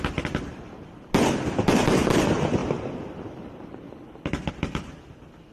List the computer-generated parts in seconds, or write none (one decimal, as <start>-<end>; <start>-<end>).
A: none